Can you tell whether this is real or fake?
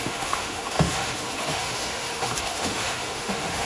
fake